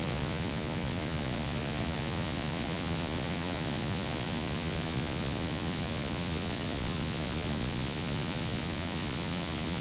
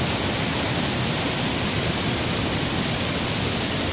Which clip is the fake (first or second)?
first